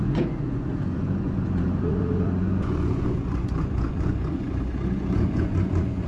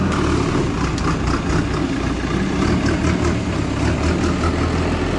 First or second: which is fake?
first